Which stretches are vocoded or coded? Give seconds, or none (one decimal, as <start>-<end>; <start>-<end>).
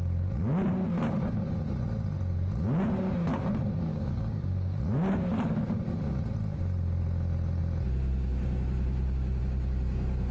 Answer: 3.9-4.8